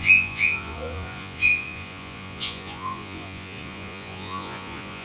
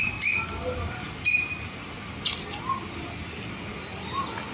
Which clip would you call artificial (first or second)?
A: first